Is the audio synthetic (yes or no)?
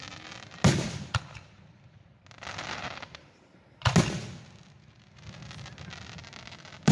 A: no